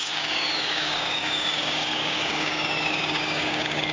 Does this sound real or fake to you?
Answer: fake